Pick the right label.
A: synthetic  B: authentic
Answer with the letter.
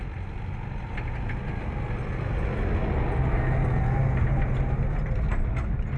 B